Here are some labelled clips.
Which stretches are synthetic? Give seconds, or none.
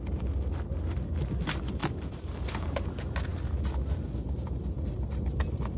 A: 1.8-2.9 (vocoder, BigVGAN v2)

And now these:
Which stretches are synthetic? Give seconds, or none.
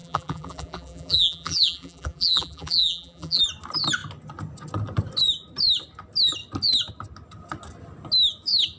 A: 0.0-3.4 (vocoder, BigVGAN v2)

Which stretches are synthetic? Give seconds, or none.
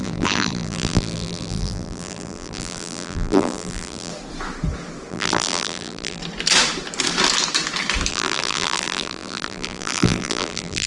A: 0.0-4.1 (vocoder, BigVGAN v2); 5.1-6.2; 8.1-10.9